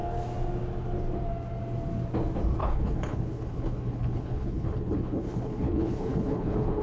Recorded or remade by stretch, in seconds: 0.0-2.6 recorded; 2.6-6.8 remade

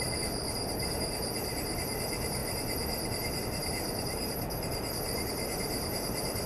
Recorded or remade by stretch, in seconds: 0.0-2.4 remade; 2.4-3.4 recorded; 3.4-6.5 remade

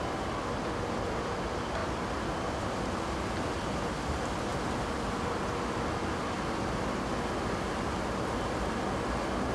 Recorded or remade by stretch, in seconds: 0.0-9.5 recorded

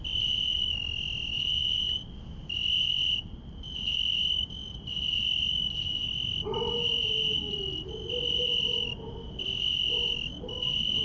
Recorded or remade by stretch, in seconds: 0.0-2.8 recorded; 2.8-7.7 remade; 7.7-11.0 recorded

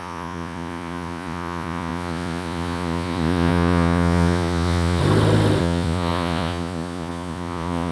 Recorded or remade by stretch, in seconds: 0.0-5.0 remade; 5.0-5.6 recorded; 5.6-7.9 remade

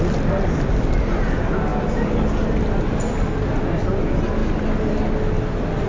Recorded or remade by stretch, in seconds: 0.0-5.9 recorded

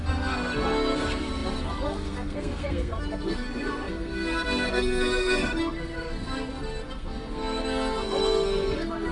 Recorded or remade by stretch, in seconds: 0.0-9.1 remade

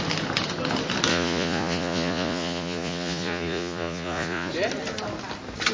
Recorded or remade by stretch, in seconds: 0.0-1.1 recorded; 1.1-4.5 remade; 4.5-5.7 recorded